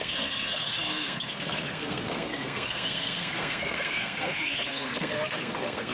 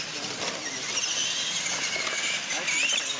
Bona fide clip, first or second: second